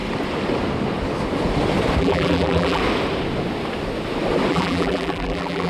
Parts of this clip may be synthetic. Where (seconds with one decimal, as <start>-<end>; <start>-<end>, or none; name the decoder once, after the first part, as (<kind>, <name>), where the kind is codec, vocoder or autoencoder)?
2.0-2.8 (vocoder, BigVGAN v2); 4.5-5.7

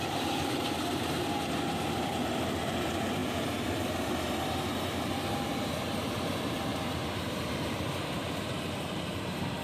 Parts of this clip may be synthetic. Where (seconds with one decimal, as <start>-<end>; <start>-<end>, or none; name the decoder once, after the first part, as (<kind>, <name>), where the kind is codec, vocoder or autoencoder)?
0.0-3.2 (vocoder, BigVGAN v2); 4.2-6.7; 7.2-9.6